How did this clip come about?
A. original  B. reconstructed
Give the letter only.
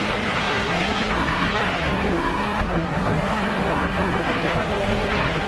B